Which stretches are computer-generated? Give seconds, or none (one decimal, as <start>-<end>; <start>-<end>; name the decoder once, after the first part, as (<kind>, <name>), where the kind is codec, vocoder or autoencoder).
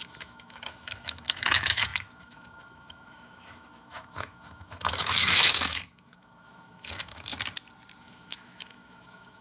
0.0-7.3 (autoencoder, DAC-VAE); 8.0-9.4